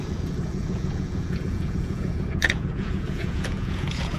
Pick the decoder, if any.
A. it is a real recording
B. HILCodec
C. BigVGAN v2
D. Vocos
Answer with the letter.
D